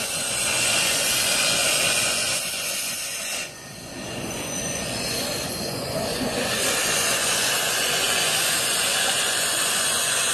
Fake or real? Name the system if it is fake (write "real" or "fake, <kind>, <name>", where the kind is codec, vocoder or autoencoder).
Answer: fake, vocoder, Vocos